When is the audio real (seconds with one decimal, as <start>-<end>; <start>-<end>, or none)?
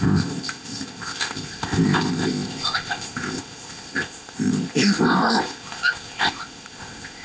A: none